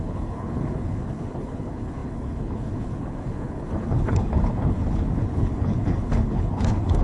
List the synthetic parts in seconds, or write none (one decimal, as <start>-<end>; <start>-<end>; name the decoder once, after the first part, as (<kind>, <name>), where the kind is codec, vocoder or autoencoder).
0.0-7.0 (codec, HILCodec)